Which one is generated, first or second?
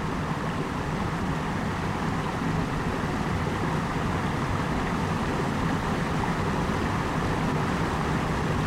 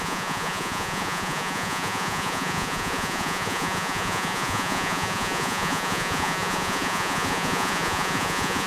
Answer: second